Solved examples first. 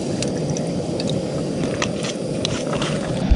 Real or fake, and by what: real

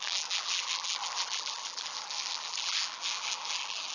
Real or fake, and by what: fake, vocoder, BigVGAN v2